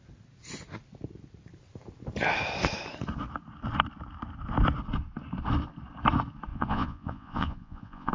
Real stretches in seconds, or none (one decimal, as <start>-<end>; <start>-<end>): 0.0-6.5